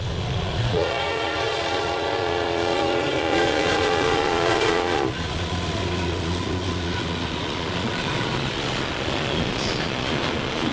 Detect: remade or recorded remade